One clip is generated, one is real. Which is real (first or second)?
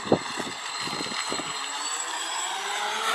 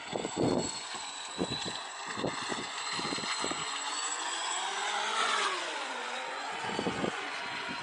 first